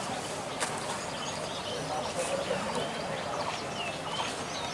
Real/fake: real